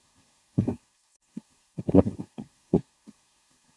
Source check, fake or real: fake